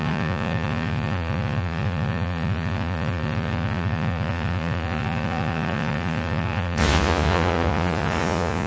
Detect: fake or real fake